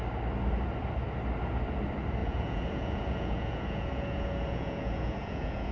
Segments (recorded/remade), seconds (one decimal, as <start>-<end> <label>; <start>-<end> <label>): 0.0-2.2 recorded; 2.2-5.7 remade